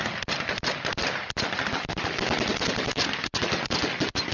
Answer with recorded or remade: recorded